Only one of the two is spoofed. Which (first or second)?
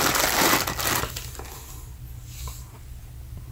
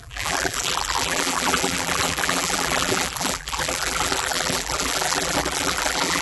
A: second